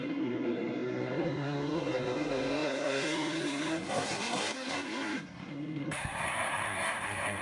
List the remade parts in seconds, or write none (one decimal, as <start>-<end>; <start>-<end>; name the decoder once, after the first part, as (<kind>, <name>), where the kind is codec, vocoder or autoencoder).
0.0-7.4 (codec, SNAC)